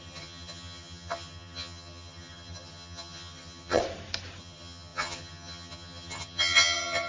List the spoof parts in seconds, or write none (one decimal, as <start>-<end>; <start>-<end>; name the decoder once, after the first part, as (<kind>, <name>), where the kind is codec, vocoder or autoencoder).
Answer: 0.0-3.8 (vocoder, HiFi-GAN); 4.4-7.1